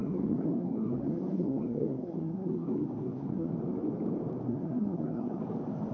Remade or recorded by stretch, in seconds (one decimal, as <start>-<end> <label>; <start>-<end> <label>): 0.0-3.5 remade; 3.5-4.5 recorded; 4.5-5.4 remade; 5.4-5.9 recorded